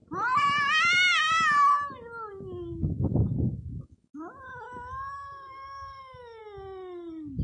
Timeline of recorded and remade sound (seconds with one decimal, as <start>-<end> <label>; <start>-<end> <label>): 0.0-2.3 recorded; 2.3-6.4 remade; 6.4-7.4 recorded